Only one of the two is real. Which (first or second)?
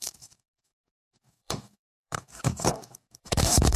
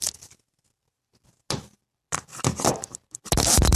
second